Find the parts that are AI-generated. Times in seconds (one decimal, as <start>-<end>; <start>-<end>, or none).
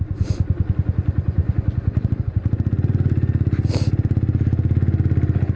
none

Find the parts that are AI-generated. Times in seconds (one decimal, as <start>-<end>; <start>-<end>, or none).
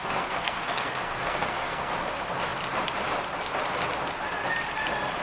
0.0-1.9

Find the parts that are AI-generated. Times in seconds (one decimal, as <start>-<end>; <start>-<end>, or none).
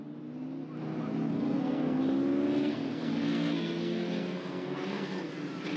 1.2-2.0; 2.6-5.3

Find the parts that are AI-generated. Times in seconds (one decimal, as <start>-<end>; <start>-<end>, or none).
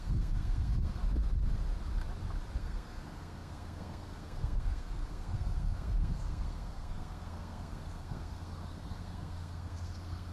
0.0-1.0; 2.6-10.3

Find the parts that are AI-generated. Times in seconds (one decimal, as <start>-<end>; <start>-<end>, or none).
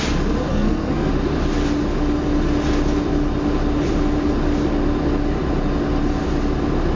0.5-1.1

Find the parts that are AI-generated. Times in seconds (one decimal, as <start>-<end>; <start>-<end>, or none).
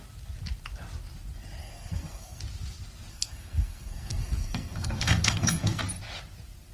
1.6-2.4; 3.1-5.8